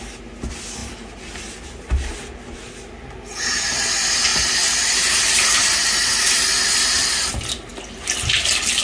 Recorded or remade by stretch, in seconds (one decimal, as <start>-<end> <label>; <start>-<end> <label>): 0.0-8.8 recorded